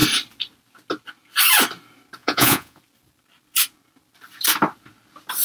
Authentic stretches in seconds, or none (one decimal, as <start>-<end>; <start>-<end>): 0.0-2.2; 2.8-5.4